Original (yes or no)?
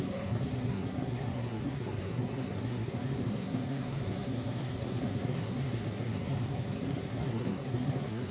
no